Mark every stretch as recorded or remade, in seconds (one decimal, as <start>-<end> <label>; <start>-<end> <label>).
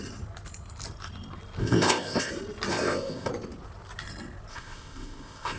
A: 0.0-1.6 recorded; 1.6-2.3 remade; 2.3-2.7 recorded; 2.7-3.3 remade; 3.3-4.5 recorded; 4.5-5.6 remade